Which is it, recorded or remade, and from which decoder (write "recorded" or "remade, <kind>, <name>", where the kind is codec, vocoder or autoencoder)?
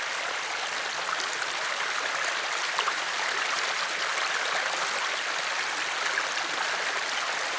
recorded